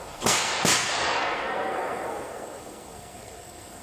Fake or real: fake